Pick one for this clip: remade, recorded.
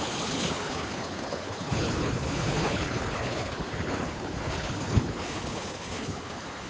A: remade